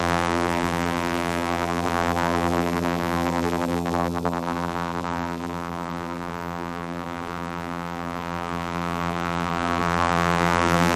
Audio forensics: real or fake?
fake